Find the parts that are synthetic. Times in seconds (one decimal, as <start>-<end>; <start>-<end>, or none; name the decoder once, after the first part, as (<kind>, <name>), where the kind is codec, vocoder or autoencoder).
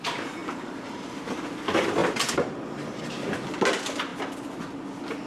0.4-1.2 (vocoder, BigVGAN v2)